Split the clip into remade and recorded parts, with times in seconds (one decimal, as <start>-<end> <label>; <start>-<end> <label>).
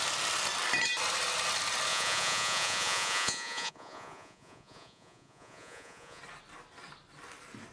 0.0-1.9 recorded; 1.9-6.2 remade; 6.2-7.7 recorded